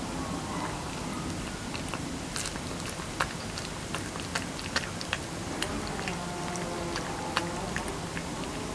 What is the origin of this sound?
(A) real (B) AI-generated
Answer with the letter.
A